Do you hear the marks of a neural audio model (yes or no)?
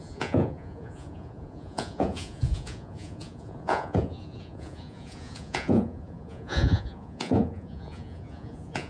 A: yes